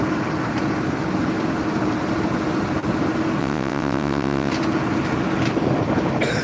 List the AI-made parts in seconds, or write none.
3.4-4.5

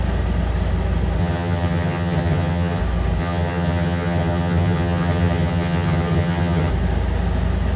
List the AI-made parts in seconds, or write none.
1.2-2.8; 3.2-6.7

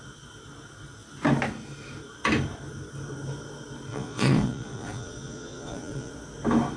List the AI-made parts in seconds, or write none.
3.9-6.1

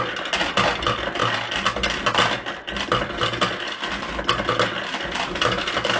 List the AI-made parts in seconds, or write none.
none

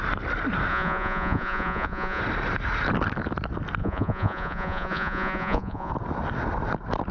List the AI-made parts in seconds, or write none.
0.7-2.2; 3.8-5.9

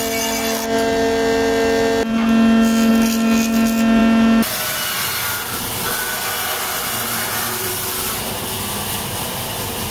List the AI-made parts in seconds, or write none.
none